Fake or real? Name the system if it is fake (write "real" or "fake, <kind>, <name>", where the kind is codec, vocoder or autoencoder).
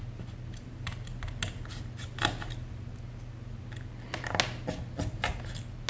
real